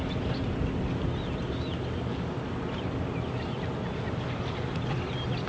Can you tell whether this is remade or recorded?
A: recorded